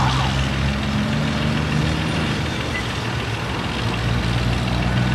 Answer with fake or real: real